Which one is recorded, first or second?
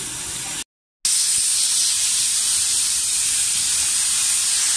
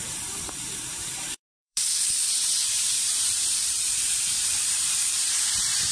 first